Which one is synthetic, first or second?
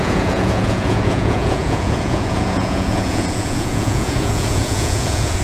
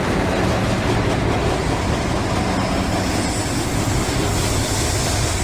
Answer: first